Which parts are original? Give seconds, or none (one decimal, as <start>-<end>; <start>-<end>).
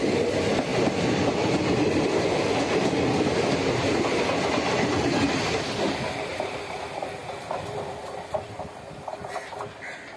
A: 0.0-10.2